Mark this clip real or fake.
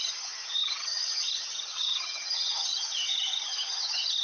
fake